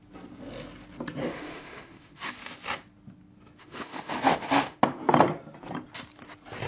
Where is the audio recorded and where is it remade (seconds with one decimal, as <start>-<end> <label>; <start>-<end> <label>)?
0.0-1.2 recorded; 1.2-2.3 remade; 2.3-3.6 recorded; 3.6-4.8 remade; 4.8-6.7 recorded